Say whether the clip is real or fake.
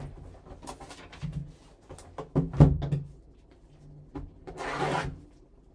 real